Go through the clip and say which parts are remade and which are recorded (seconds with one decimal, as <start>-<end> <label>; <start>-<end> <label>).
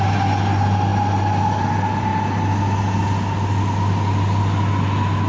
0.0-5.3 recorded